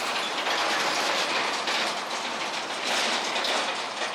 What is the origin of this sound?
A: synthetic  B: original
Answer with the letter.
A